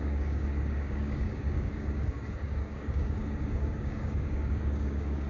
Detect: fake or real fake